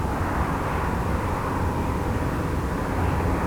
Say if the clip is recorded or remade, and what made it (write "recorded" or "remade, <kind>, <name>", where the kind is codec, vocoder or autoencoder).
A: recorded